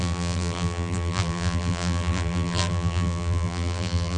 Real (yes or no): no